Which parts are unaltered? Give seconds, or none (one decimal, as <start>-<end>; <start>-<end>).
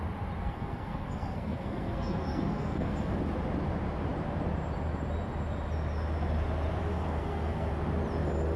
0.0-0.4; 3.1-6.9; 7.7-8.6